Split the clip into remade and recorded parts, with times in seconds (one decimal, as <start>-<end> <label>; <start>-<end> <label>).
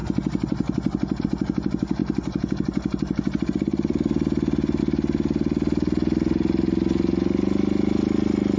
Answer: 0.0-2.0 recorded; 2.0-4.8 remade; 4.8-8.6 recorded